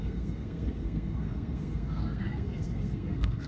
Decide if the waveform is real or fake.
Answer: fake